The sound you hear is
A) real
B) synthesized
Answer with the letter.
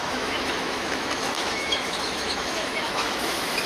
B